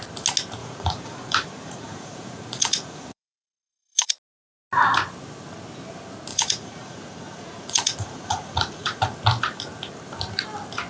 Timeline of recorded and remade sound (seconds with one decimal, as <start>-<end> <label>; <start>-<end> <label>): 0.0-0.6 recorded; 0.6-4.1 remade; 4.1-6.3 recorded; 6.3-9.0 remade; 9.0-10.9 recorded